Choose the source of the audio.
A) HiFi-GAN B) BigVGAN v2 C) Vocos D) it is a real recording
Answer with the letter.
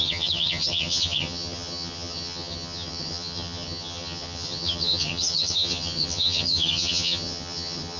A